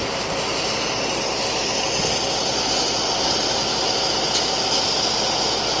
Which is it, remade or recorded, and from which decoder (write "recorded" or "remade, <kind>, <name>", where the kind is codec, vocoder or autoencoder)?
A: recorded